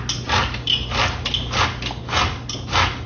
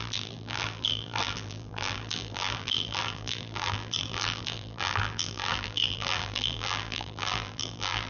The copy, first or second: second